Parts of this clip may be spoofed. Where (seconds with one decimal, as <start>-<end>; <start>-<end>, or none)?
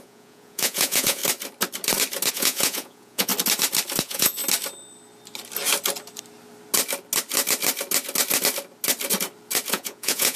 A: 0.0-1.2; 2.3-3.3; 4.0-4.4; 9.7-10.4